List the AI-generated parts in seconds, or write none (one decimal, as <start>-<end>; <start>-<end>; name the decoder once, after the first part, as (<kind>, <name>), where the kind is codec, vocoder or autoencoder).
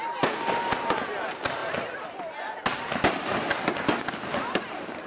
none